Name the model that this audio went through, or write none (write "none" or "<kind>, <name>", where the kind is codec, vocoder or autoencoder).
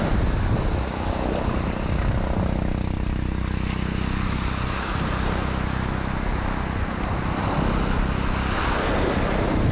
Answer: none